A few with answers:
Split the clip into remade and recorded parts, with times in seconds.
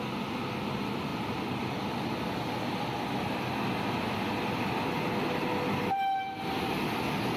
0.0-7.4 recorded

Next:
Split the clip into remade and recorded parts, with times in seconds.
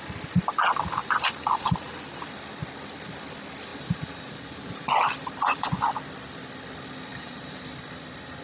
0.0-1.0 recorded; 1.0-2.3 remade; 2.3-3.7 recorded; 3.7-5.8 remade; 5.8-7.1 recorded; 7.1-7.6 remade; 7.6-8.4 recorded